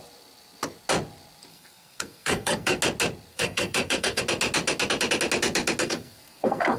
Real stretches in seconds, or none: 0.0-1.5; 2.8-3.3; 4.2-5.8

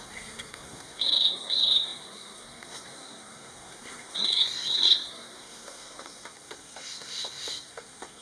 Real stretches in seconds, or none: none

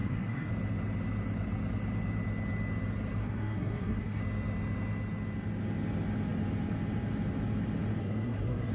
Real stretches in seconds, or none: 0.5-3.2; 4.2-8.0

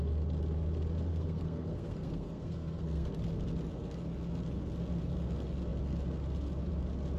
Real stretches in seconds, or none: 0.0-1.1; 3.1-7.2

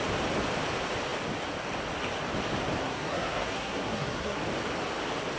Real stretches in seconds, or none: 0.0-2.8; 4.4-5.4

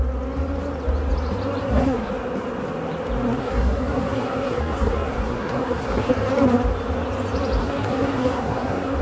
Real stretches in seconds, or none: 0.0-1.6; 2.1-3.4; 6.1-7.6